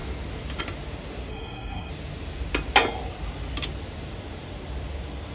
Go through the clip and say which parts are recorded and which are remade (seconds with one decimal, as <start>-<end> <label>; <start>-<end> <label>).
0.0-1.3 recorded; 1.3-1.9 remade; 1.9-5.3 recorded